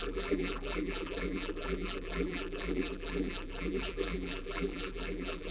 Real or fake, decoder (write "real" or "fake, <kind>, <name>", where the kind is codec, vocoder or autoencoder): fake, vocoder, BigVGAN v2